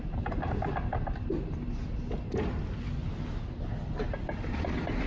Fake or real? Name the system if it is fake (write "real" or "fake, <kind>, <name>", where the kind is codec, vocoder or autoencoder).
real